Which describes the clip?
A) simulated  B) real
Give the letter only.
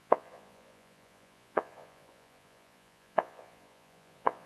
A